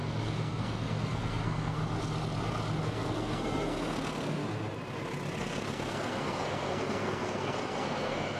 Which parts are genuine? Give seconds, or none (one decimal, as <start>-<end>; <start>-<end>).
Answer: 1.8-2.8; 4.4-5.4